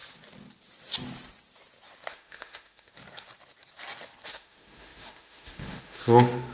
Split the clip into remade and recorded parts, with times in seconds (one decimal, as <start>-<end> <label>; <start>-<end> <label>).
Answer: 0.0-2.1 recorded; 2.1-2.9 remade; 2.9-4.3 recorded; 4.3-6.5 remade